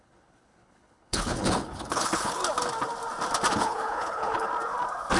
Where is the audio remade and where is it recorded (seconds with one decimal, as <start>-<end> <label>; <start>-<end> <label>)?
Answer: 0.0-2.4 remade; 2.4-3.5 recorded; 3.5-4.5 remade; 4.5-5.2 recorded